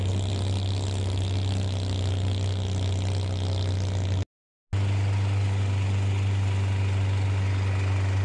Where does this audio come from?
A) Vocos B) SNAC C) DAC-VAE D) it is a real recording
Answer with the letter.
D